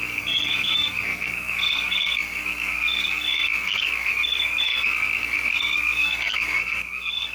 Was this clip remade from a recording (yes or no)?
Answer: yes